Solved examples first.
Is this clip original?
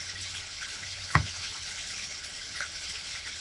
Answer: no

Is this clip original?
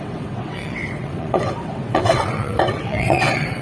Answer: no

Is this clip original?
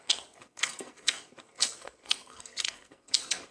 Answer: no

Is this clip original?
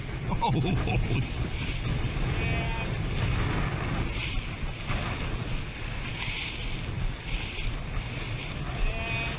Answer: yes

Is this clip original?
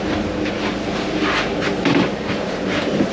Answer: yes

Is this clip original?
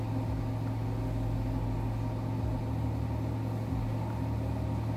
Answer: yes